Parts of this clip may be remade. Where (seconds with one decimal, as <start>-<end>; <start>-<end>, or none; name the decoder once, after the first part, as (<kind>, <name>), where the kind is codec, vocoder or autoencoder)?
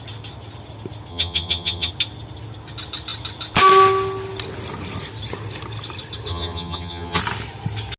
1.1-1.9 (vocoder, HiFi-GAN); 6.3-7.2